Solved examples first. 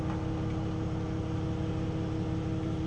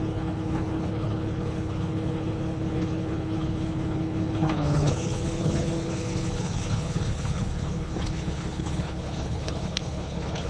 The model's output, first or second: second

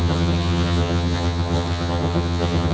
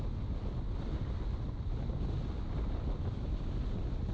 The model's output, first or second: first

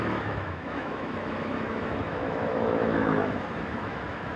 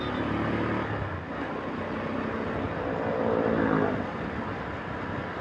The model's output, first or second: first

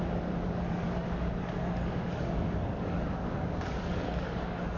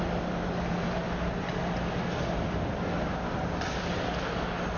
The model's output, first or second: first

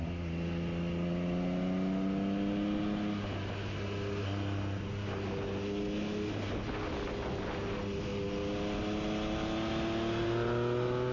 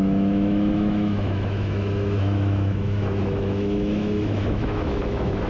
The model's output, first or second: second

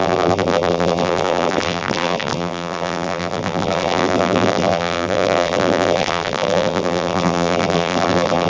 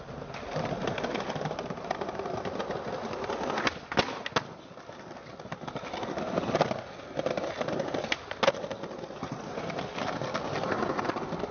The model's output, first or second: first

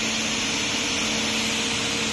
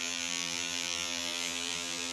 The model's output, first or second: second